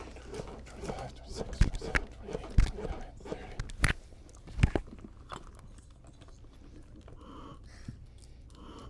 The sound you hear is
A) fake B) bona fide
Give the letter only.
B